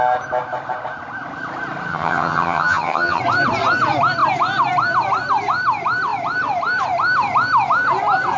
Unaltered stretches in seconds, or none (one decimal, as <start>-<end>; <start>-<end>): 0.0-1.9; 3.2-8.4